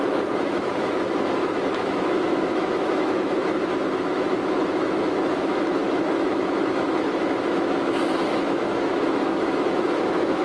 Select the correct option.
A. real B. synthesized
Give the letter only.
B